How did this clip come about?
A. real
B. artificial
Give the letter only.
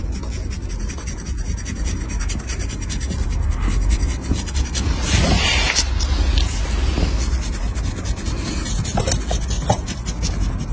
A